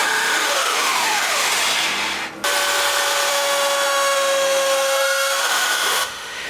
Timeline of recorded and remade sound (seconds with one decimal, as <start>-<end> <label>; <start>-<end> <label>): 0.0-1.5 remade; 1.5-3.3 recorded; 3.3-6.5 remade